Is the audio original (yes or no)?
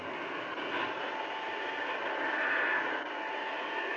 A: yes